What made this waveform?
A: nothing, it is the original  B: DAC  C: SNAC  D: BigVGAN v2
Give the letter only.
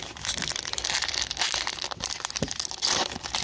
A